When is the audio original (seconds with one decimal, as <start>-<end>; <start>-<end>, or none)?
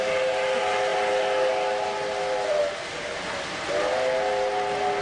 0.0-5.0